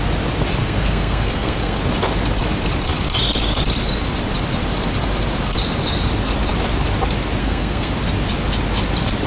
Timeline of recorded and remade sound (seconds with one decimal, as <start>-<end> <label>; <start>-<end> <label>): 0.0-0.6 recorded; 0.6-1.8 remade; 1.8-7.4 recorded; 7.4-7.9 remade; 7.9-9.3 recorded